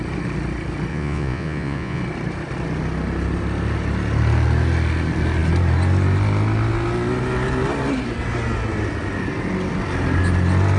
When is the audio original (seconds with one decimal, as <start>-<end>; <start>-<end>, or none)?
0.0-0.9; 2.0-10.8